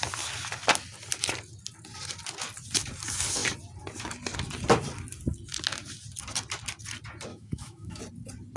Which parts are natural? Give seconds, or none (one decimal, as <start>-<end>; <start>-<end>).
0.0-7.3; 8.0-8.6